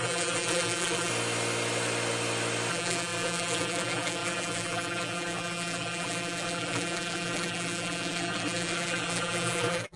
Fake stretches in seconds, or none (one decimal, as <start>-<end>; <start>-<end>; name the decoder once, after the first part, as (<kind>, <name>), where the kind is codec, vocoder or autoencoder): 0.0-1.1 (vocoder, BigVGAN v2); 2.7-10.0